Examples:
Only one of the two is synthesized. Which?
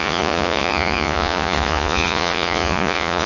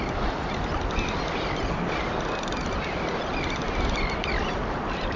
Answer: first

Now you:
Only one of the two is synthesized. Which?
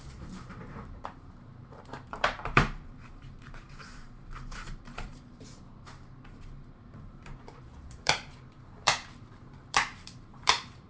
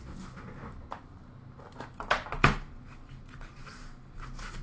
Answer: first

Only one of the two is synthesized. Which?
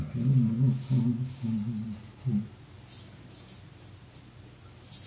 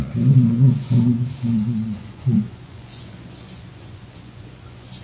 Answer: second